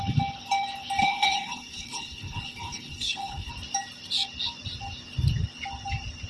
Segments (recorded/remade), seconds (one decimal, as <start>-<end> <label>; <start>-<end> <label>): 0.0-1.0 recorded; 1.0-3.5 remade; 3.5-6.3 recorded